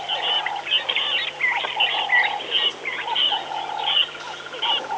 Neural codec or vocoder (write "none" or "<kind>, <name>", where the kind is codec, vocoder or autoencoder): none